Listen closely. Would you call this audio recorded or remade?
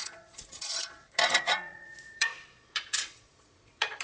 remade